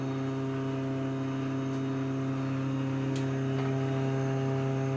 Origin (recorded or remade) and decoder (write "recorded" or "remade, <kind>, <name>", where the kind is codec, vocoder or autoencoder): recorded